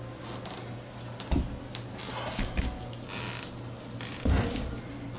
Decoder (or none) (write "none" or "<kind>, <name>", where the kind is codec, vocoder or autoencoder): none